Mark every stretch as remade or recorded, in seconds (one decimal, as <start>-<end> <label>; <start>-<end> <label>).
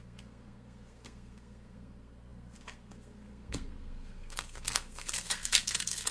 0.0-6.1 remade